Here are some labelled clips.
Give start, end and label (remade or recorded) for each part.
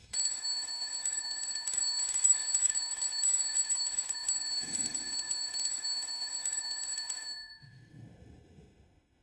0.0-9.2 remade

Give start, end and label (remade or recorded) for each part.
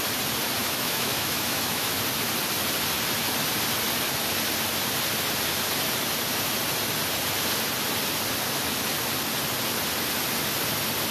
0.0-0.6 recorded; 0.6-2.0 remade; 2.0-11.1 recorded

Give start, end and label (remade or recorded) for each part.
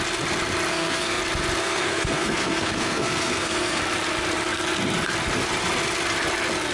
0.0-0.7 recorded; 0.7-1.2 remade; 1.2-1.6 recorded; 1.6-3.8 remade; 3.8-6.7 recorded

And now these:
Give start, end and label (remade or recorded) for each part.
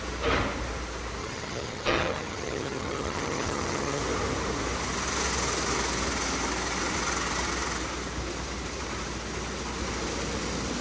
0.0-1.2 recorded; 1.2-4.0 remade; 4.0-10.8 recorded